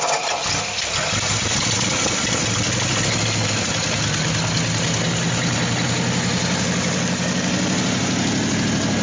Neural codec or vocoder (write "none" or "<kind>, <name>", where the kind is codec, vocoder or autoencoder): none